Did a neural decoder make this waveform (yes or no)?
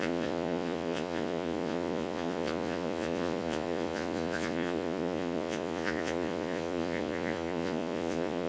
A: yes